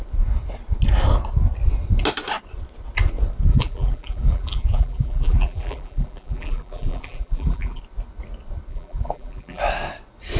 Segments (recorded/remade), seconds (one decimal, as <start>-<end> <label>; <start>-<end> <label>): 0.0-3.5 recorded; 3.5-7.8 remade; 7.8-8.7 recorded; 8.7-9.6 remade; 9.6-10.4 recorded